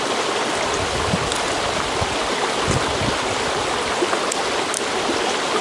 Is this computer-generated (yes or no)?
no